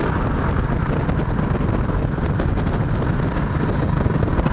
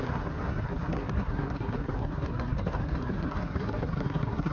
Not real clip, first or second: second